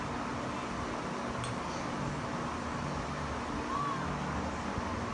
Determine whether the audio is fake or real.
real